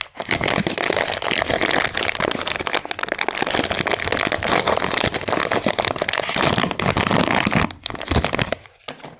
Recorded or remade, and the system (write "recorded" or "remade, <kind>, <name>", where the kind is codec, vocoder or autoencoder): recorded